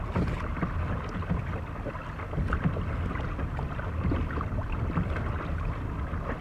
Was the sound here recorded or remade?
recorded